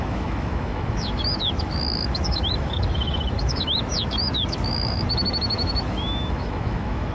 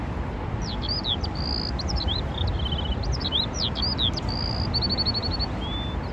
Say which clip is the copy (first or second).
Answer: first